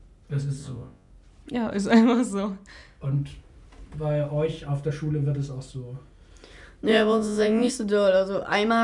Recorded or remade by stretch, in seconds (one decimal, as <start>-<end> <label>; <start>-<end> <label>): 0.0-0.6 recorded; 0.6-1.1 remade; 1.1-6.9 recorded; 6.9-7.7 remade; 7.7-8.8 recorded